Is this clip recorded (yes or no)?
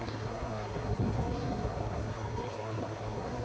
no